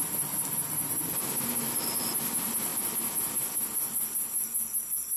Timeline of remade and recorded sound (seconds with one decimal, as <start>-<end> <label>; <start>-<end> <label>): 0.0-5.2 recorded